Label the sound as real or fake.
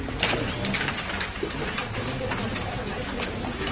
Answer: real